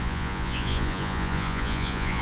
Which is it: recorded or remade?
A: remade